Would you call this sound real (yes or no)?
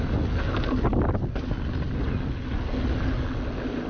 yes